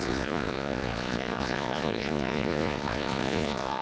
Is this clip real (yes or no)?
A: no